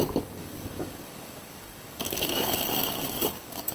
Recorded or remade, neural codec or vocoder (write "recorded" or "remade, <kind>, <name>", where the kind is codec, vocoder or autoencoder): remade, codec, DAC